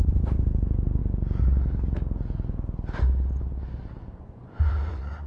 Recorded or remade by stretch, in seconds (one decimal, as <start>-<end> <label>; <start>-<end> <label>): 0.0-1.0 remade; 1.0-4.2 recorded; 4.2-5.3 remade